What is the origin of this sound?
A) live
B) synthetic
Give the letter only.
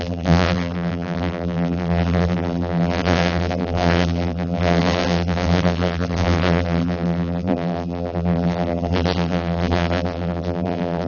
B